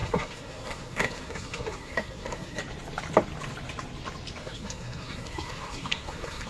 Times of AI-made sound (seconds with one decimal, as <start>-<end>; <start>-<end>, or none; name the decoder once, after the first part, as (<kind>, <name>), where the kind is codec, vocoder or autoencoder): 0.0-2.6 (codec, SNAC); 4.4-6.5